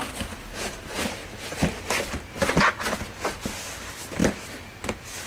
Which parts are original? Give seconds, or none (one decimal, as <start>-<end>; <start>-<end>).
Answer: 0.0-5.3